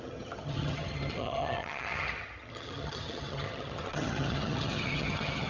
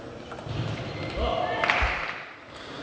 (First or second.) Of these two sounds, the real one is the second